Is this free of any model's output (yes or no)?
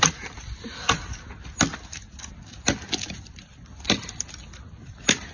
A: yes